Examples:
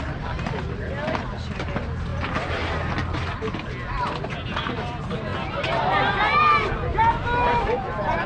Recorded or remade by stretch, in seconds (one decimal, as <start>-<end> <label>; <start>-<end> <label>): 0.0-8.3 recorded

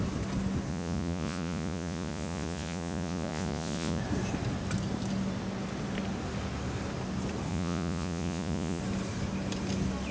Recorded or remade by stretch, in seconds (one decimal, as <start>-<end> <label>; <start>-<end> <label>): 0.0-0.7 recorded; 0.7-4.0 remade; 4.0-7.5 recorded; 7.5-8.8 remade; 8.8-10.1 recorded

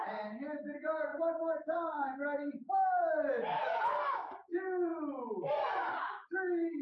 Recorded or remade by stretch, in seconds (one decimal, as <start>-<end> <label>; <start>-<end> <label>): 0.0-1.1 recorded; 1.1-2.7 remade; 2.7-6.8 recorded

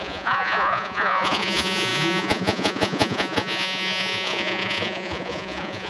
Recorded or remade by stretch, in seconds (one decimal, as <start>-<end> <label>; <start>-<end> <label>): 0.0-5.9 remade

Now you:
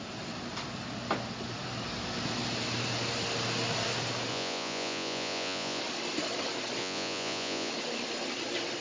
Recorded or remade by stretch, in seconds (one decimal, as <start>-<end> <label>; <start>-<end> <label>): 0.0-4.3 recorded; 4.3-5.8 remade; 5.8-6.8 recorded; 6.8-7.7 remade; 7.7-8.8 recorded